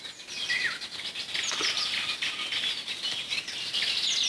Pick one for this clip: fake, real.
real